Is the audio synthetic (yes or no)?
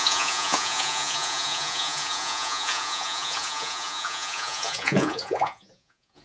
yes